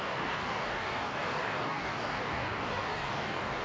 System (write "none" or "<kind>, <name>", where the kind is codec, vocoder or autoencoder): codec, DAC